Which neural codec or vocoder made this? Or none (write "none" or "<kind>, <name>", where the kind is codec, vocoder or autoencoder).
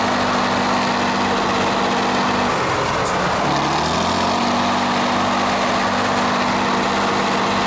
none